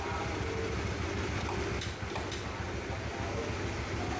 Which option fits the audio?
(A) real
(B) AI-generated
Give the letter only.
A